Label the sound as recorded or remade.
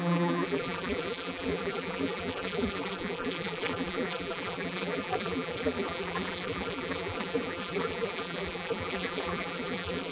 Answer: remade